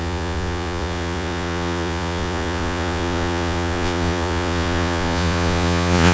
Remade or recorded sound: remade